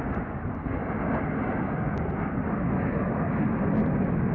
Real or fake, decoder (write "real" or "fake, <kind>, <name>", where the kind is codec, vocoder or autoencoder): real